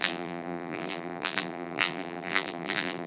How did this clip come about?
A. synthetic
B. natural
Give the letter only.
A